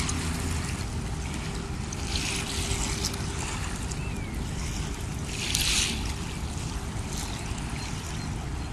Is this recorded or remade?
recorded